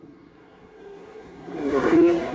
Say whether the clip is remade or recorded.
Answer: remade